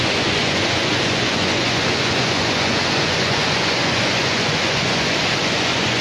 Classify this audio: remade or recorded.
remade